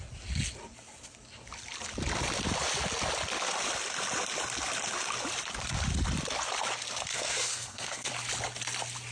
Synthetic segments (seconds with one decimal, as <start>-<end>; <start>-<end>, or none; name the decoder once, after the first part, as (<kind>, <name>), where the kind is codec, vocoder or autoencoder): 7.1-8.1 (codec, SNAC)